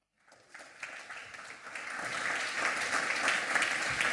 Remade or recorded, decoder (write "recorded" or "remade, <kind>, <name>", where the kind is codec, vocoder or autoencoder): recorded